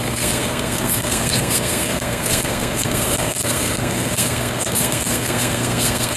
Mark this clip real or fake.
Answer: fake